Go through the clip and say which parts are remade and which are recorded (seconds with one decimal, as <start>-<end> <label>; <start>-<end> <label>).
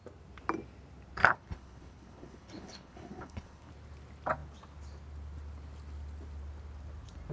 0.0-1.2 recorded; 1.2-3.7 remade; 3.7-7.3 recorded